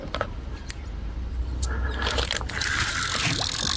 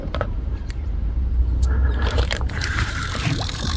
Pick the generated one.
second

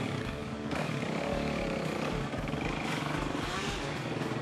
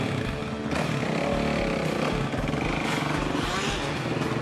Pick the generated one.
first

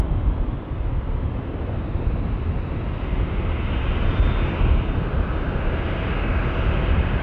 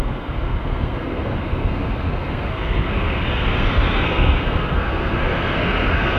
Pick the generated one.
second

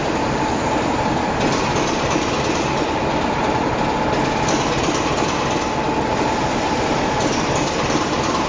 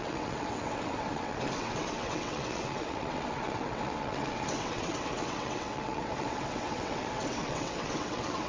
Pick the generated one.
second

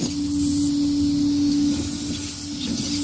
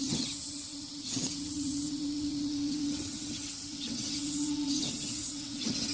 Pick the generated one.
second